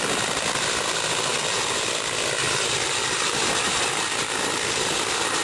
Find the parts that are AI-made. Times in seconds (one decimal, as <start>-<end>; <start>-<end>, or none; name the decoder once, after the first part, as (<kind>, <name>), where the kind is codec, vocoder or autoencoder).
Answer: 2.4-3.9 (vocoder, BigVGAN v2)